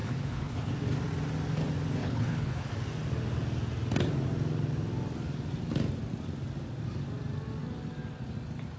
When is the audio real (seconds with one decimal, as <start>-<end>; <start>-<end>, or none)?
0.7-2.0; 2.7-8.8